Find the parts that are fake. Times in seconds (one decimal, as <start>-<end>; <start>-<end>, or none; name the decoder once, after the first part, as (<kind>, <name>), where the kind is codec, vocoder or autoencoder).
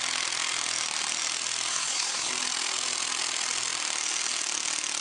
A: 1.7-2.3 (codec, SNAC)